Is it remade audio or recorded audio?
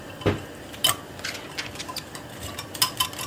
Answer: recorded